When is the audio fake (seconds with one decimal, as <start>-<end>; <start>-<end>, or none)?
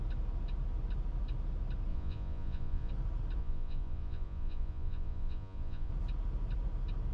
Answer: 1.9-2.9; 3.4-5.9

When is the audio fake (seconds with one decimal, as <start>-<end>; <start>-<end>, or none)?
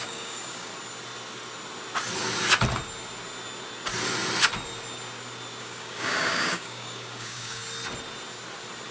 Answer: 0.0-0.7; 5.6-7.6